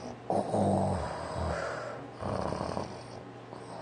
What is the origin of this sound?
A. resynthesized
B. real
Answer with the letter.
B